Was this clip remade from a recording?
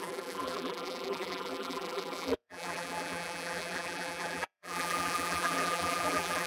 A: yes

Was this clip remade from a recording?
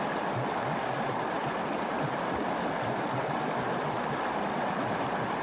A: no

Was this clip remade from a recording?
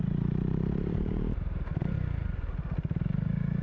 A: yes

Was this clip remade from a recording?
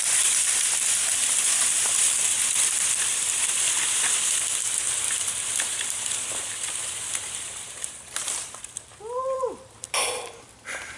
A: yes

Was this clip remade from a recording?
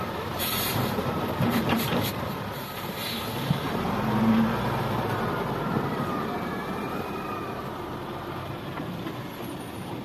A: yes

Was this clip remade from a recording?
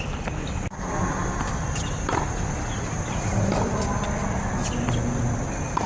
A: no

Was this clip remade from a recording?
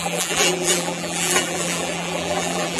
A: yes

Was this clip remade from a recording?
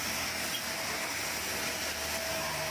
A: no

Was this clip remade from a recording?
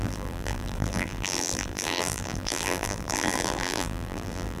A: yes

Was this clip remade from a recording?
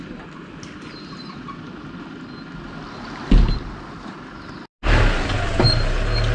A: no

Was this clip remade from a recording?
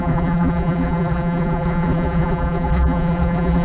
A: yes